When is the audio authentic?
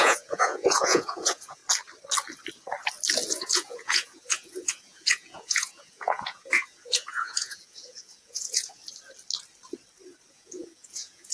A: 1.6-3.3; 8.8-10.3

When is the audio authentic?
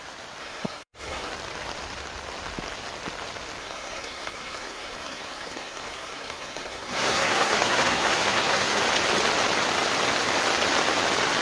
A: 0.0-0.4; 1.3-3.6; 8.8-11.4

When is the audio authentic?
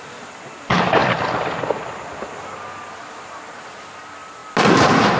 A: 1.0-3.0; 4.4-5.2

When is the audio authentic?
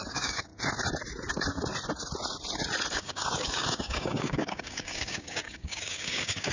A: 0.5-2.9